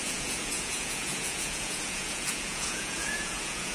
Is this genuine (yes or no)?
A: no